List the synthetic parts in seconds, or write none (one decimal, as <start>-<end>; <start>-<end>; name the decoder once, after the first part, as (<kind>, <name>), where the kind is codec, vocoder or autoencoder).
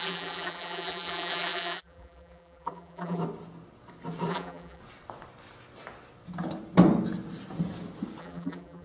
0.0-3.2 (vocoder, BigVGAN v2); 4.3-4.8; 8.2-8.8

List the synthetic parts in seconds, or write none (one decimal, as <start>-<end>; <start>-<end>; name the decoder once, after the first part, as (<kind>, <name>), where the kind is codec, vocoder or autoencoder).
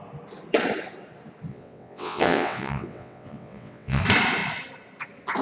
1.5-4.0 (vocoder, WaveNeXt)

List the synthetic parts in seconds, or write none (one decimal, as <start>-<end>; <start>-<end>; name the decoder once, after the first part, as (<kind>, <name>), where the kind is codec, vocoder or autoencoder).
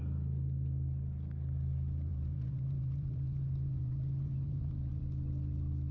2.1-5.0 (vocoder, BigVGAN v2)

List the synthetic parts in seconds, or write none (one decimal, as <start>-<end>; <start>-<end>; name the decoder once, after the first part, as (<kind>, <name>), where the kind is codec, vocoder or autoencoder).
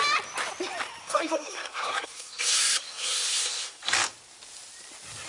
1.0-3.8 (codec, SNAC)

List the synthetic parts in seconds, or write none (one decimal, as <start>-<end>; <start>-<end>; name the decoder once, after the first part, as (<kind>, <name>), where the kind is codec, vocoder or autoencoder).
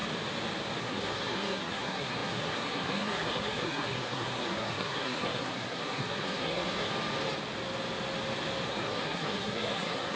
0.8-6.9 (codec, SNAC); 8.7-10.2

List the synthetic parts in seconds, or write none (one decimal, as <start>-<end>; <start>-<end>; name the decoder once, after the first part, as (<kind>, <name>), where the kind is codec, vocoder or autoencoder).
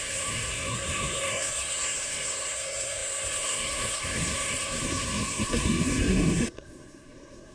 0.0-7.5 (codec, SNAC)